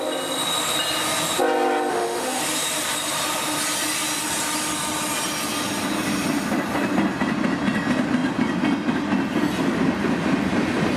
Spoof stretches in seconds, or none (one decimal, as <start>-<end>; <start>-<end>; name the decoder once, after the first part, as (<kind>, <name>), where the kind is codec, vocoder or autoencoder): 1.9-2.4 (autoencoder, DAC-VAE)